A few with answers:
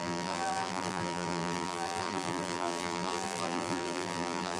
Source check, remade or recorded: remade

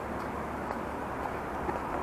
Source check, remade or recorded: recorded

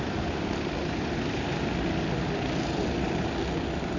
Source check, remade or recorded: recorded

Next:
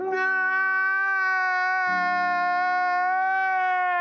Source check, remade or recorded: recorded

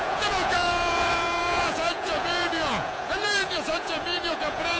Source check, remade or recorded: remade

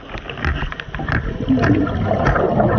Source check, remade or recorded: recorded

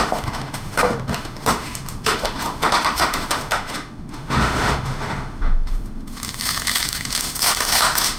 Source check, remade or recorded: remade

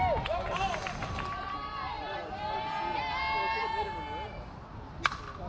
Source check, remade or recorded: recorded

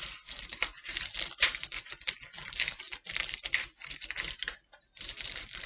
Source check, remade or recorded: recorded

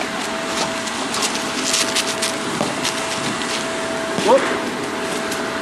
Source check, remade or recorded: recorded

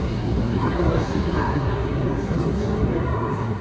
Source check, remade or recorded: remade